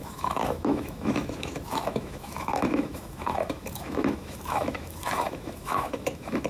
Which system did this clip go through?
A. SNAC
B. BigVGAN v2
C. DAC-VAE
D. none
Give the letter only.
C